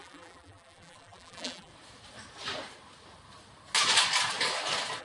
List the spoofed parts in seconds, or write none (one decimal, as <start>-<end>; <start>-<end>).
0.0-1.7